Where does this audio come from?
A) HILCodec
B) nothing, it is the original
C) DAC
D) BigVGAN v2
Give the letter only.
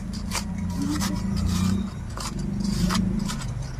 B